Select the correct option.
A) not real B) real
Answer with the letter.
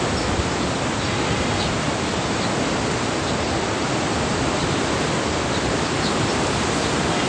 B